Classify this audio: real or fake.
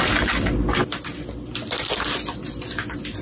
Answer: real